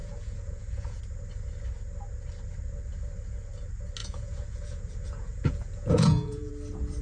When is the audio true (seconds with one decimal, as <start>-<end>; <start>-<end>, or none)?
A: 1.0-4.0; 6.5-7.0